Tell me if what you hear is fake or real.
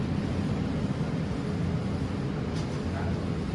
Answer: real